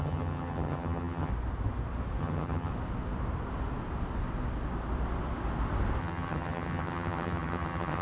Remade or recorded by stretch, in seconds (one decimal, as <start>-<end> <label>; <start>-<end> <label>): 0.0-1.3 remade; 1.3-2.2 recorded; 2.2-2.7 remade; 2.7-6.0 recorded; 6.0-8.0 remade